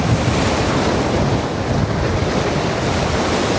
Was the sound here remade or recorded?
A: remade